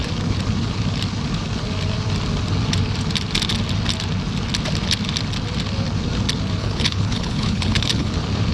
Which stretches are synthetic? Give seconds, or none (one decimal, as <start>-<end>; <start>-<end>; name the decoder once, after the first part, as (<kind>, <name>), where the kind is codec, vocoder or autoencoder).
6.6-8.1 (codec, HILCodec)